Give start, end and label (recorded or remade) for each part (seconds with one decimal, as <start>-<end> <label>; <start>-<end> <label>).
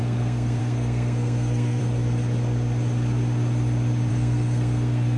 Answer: 0.0-1.8 remade; 1.8-4.1 recorded; 4.1-5.2 remade